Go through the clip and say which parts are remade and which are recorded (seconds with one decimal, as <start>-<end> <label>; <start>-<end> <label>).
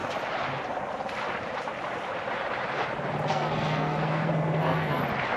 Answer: 0.0-3.3 recorded; 3.3-5.0 remade; 5.0-5.4 recorded